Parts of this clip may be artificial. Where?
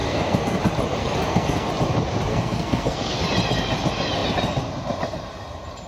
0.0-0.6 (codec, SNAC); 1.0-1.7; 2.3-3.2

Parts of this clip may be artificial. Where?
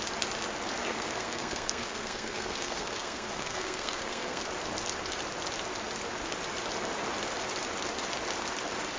0.8-4.4 (codec, SNAC)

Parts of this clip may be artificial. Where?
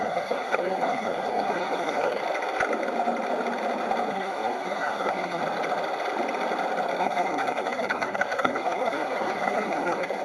0.0-2.2 (codec, SNAC); 4.1-5.4; 7.0-10.2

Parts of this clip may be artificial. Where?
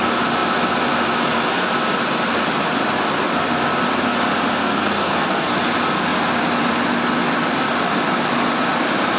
4.6-5.5 (codec, SNAC)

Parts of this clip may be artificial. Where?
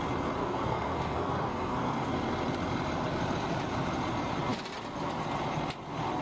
0.4-2.1 (codec, SNAC)